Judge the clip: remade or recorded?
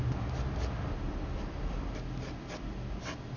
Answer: recorded